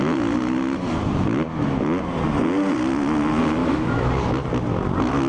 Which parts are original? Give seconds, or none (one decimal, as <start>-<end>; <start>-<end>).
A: 0.0-3.6; 4.1-5.3